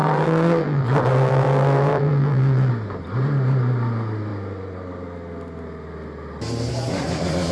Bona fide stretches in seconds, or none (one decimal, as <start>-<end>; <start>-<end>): 2.7-7.5